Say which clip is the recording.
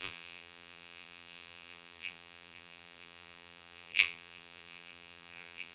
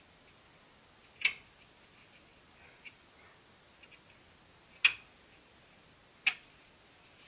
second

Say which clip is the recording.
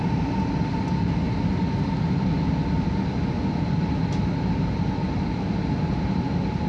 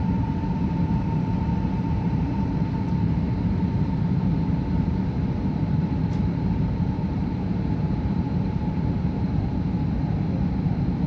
first